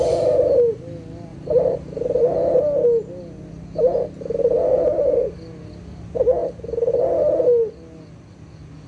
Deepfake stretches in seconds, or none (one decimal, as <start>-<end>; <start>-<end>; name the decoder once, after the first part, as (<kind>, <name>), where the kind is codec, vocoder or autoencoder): 1.3-2.2 (vocoder, BigVGAN v2)

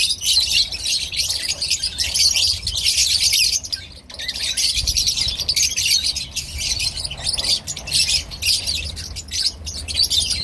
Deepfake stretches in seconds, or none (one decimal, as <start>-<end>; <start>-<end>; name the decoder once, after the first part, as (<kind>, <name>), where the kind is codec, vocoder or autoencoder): 3.0-4.0 (vocoder, BigVGAN v2)

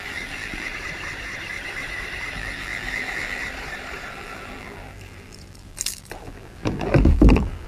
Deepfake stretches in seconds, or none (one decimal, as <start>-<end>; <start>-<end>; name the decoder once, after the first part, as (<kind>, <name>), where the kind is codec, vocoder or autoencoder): 0.0-0.7 (vocoder, BigVGAN v2); 2.3-3.4; 4.1-7.7